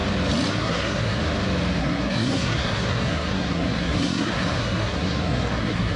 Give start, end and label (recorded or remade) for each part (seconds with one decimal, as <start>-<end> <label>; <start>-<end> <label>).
0.0-0.5 recorded; 0.5-1.2 remade; 1.2-1.8 recorded; 1.8-6.0 remade